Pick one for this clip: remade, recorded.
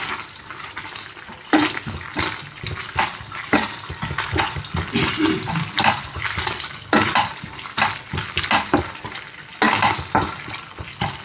recorded